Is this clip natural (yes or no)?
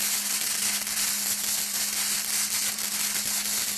yes